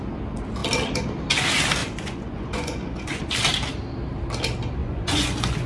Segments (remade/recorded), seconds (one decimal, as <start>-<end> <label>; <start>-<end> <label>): 0.0-1.8 recorded; 1.8-3.2 remade; 3.2-4.8 recorded; 4.8-5.7 remade

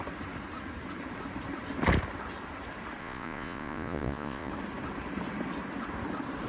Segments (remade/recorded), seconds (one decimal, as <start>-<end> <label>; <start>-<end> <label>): 0.0-3.0 recorded; 3.0-4.5 remade; 4.5-6.5 recorded

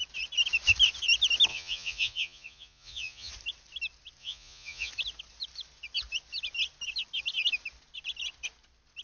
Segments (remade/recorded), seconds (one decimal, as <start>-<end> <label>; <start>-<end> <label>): 0.0-1.5 recorded; 1.5-3.3 remade; 3.3-4.2 recorded; 4.2-4.9 remade; 4.9-9.0 recorded

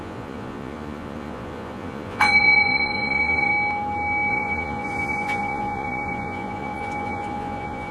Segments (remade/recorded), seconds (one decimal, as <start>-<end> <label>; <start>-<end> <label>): 0.0-3.5 remade; 3.5-4.3 recorded; 4.3-7.9 remade

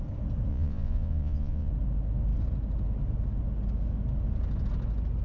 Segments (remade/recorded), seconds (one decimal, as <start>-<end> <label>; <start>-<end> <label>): 0.0-0.5 recorded; 0.5-1.7 remade; 1.7-5.2 recorded